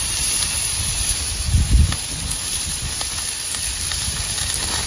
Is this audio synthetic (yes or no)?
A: yes